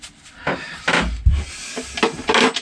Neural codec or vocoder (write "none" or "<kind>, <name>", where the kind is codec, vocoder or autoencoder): none